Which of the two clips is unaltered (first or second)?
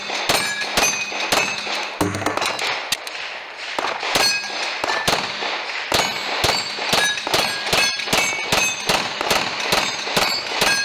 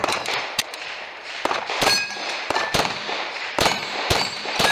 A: first